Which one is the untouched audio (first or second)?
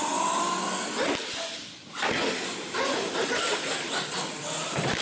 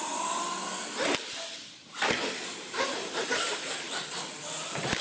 first